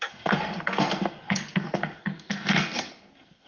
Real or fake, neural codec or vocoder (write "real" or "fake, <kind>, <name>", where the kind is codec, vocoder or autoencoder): fake, codec, SNAC